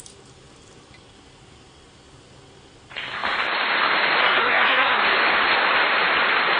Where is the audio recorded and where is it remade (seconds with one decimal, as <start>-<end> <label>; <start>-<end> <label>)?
0.0-4.2 recorded; 4.2-5.0 remade; 5.0-6.6 recorded